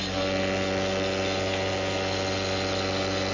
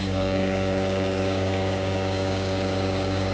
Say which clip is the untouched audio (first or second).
first